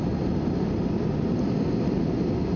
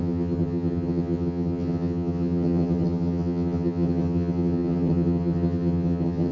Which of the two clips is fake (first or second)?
second